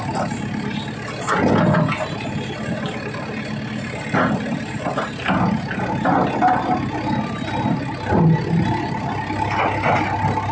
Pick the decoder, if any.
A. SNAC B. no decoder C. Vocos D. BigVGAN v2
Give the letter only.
B